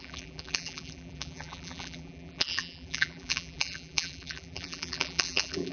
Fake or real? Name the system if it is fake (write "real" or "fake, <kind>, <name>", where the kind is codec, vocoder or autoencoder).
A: fake, vocoder, BigVGAN v2